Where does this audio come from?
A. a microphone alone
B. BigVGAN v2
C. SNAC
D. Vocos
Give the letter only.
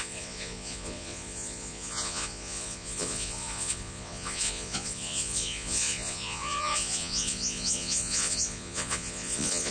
D